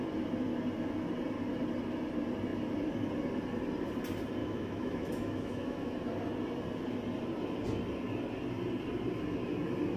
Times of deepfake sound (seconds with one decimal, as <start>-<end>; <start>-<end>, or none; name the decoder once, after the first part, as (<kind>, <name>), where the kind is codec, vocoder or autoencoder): 4.4-6.0 (autoencoder, DAC-VAE)

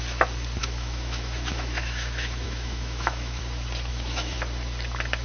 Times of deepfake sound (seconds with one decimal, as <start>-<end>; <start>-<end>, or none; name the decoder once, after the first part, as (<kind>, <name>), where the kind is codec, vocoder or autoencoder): 0.6-3.4 (autoencoder, DAC-VAE); 3.9-4.4

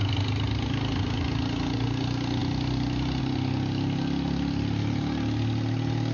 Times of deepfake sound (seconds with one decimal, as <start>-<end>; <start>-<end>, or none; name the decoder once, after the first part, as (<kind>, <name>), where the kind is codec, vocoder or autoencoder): none

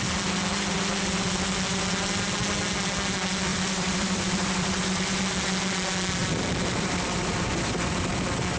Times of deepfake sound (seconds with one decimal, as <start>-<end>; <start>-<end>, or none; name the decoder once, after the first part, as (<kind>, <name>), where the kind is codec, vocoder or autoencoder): 3.5-5.2 (vocoder, BigVGAN v2); 6.2-8.1

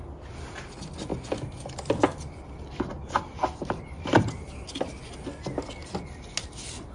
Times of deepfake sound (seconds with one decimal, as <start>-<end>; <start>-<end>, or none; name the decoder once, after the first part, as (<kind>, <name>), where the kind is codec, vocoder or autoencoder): none